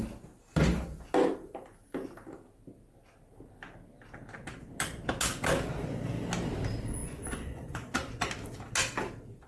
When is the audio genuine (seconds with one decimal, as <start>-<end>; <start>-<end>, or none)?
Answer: 0.0-7.0; 8.2-9.5